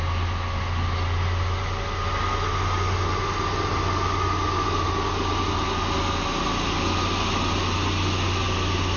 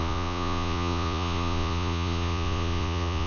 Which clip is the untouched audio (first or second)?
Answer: first